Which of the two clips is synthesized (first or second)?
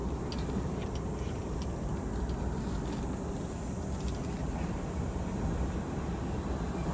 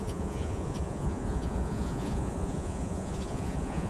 second